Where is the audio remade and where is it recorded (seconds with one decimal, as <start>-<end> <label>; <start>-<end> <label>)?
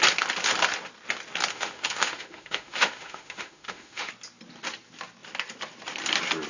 0.0-1.5 recorded; 1.5-4.1 remade; 4.1-6.5 recorded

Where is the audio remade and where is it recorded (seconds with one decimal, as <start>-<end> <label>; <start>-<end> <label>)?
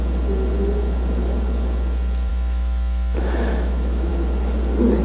0.0-2.3 recorded; 2.3-4.1 remade; 4.1-5.0 recorded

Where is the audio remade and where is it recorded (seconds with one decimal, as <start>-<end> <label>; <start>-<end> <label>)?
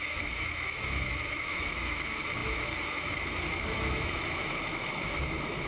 0.0-5.7 remade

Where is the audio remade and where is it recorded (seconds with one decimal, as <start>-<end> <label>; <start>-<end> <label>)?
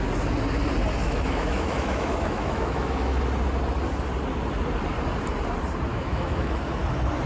0.0-1.0 recorded; 1.0-3.2 remade; 3.2-5.9 recorded; 5.9-6.6 remade; 6.6-7.3 recorded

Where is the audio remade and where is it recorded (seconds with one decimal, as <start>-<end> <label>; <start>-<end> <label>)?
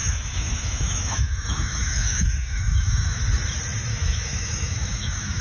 0.0-3.2 remade; 3.2-3.9 recorded; 3.9-5.4 remade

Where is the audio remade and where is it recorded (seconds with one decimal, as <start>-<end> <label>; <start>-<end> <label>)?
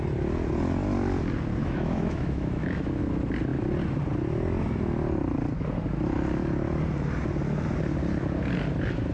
0.0-1.6 recorded; 1.6-3.0 remade; 3.0-9.1 recorded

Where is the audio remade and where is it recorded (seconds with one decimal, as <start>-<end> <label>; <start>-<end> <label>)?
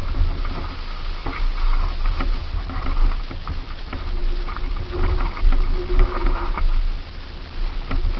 0.0-6.2 recorded; 6.2-6.8 remade; 6.8-8.2 recorded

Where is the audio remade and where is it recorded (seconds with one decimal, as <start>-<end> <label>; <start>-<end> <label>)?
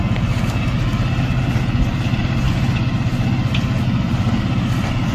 0.0-5.1 recorded